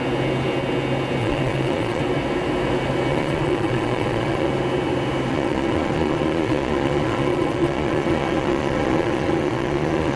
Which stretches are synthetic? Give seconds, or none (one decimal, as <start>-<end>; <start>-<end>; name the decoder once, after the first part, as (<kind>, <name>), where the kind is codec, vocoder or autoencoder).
1.2-2.0 (vocoder, Vocos); 3.1-4.5; 5.3-10.2